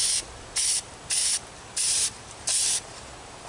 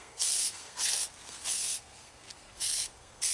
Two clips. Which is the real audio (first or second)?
first